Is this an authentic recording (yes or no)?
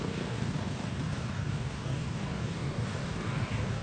no